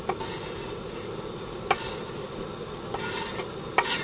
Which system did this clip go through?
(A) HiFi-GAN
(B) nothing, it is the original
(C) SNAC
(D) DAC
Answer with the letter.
B